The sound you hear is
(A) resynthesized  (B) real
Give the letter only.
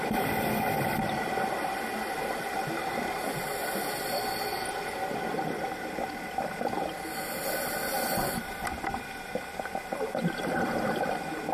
B